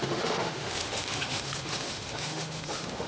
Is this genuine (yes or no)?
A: no